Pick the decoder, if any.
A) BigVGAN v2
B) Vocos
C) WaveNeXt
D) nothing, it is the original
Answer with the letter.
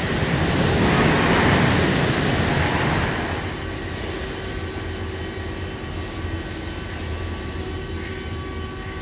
D